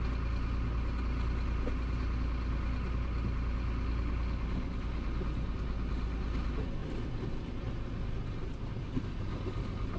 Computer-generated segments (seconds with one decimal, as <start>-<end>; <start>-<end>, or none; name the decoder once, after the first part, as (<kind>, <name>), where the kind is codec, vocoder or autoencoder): none